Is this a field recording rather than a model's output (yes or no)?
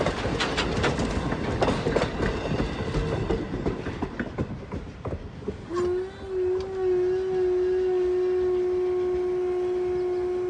yes